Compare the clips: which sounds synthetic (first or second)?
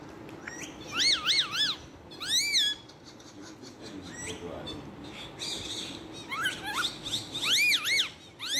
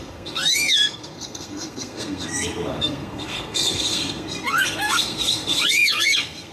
second